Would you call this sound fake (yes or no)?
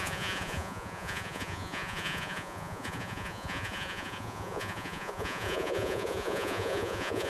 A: yes